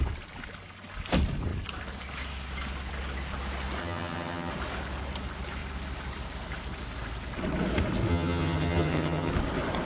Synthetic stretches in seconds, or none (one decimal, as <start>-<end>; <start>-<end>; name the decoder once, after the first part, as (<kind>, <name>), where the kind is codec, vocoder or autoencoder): 3.8-4.5 (vocoder, HiFi-GAN); 8.1-9.3